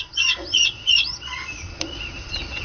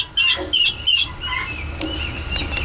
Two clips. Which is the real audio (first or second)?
second